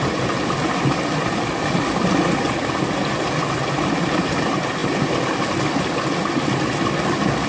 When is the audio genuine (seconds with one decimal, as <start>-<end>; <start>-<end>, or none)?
0.0-7.5